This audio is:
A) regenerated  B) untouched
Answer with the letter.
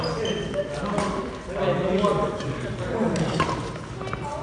B